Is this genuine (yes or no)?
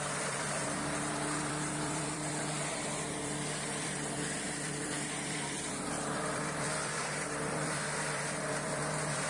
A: no